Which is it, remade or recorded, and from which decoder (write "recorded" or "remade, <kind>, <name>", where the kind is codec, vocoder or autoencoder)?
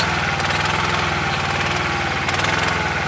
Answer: recorded